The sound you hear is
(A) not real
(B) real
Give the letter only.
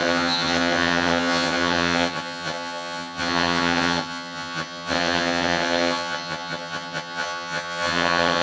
A